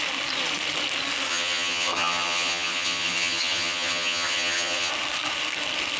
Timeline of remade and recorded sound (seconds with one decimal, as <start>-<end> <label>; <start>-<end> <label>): 0.0-1.3 recorded; 1.3-4.9 remade; 4.9-6.0 recorded